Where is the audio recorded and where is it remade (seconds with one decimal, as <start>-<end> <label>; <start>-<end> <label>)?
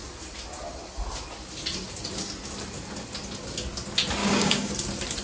0.0-4.2 recorded; 4.2-4.7 remade; 4.7-5.2 recorded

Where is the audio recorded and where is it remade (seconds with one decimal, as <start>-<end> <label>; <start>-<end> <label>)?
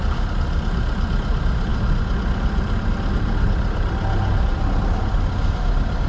0.0-6.1 recorded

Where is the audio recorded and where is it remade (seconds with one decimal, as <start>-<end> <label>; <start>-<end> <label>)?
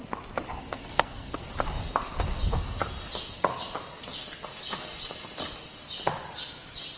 0.0-0.6 recorded; 0.6-1.5 remade; 1.5-7.0 recorded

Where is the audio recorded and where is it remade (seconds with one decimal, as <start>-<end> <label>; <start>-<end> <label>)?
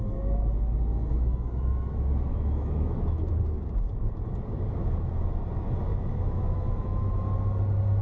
0.0-1.1 recorded; 1.1-3.3 remade; 3.3-5.9 recorded; 5.9-7.0 remade; 7.0-8.0 recorded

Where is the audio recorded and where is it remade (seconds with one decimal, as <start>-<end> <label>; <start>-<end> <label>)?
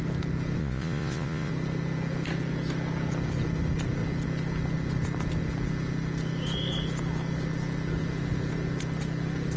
0.0-0.6 recorded; 0.6-1.5 remade; 1.5-9.6 recorded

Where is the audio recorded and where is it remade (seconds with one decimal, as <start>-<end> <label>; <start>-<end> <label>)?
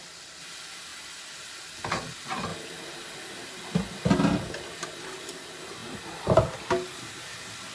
0.0-7.7 recorded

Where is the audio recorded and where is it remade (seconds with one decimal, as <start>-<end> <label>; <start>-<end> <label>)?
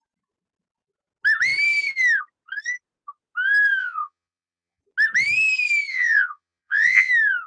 0.0-3.8 recorded; 3.8-4.8 remade; 4.8-5.9 recorded; 5.9-7.1 remade; 7.1-7.5 recorded